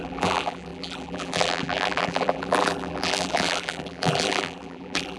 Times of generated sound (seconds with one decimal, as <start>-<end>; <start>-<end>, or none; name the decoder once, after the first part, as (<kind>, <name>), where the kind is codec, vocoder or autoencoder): 0.0-5.2 (vocoder, BigVGAN v2)